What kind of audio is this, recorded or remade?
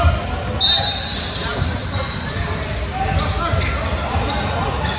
recorded